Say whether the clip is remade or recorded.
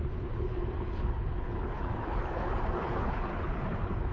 remade